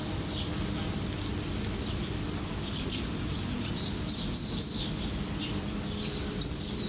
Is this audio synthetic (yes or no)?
no